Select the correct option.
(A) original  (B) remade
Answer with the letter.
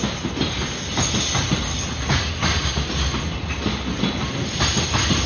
A